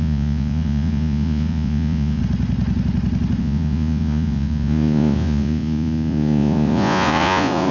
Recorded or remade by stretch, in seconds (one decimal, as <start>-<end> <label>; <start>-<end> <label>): 0.0-2.2 remade; 2.2-3.4 recorded; 3.4-7.7 remade